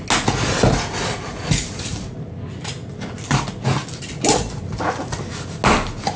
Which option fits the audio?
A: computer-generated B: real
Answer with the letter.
B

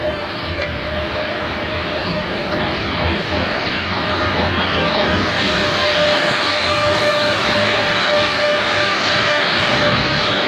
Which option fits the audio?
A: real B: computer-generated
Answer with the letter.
B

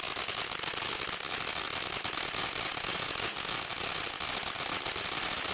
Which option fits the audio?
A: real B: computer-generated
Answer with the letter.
A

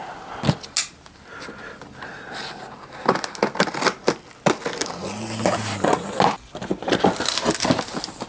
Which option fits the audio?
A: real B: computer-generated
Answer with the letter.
A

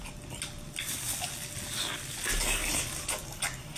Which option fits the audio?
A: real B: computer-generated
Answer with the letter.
A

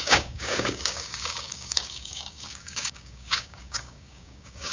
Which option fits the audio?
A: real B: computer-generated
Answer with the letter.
B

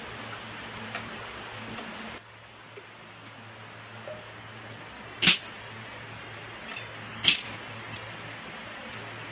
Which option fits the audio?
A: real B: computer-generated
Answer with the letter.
A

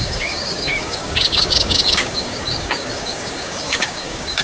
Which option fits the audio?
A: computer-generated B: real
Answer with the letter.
A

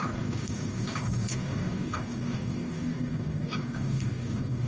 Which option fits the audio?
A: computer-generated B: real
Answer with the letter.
A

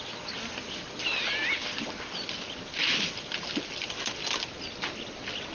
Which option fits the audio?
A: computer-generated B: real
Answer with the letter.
B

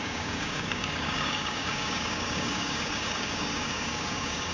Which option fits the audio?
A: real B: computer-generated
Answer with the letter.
B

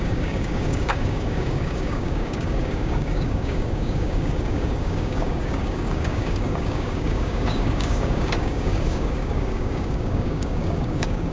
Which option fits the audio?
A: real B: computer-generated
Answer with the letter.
B